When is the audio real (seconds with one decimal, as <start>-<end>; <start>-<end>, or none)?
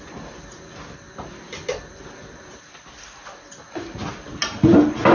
0.0-5.1